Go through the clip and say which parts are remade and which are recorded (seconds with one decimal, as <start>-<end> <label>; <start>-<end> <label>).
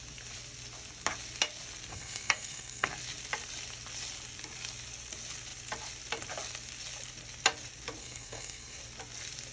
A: 0.0-1.9 recorded; 1.9-2.9 remade; 2.9-8.0 recorded; 8.0-8.8 remade; 8.8-9.5 recorded